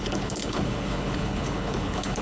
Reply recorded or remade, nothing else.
remade